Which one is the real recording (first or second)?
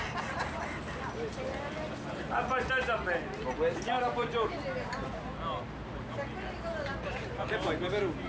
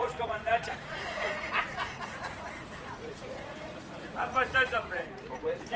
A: first